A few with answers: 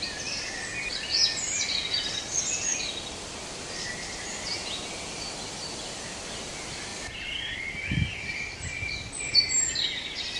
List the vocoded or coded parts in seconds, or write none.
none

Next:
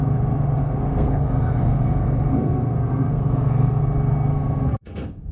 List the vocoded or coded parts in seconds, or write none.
0.6-3.8 (codec, SNAC); 4.3-5.3